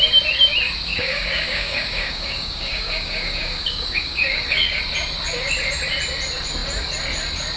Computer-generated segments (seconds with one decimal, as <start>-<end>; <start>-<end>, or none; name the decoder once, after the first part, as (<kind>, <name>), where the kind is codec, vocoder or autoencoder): 0.9-4.8 (codec, DAC)